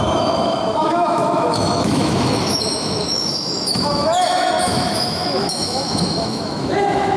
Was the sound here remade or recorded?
remade